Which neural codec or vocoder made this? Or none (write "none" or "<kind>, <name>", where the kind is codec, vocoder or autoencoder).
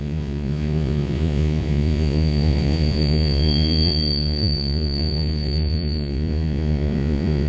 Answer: vocoder, Vocos